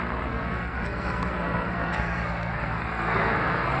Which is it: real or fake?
fake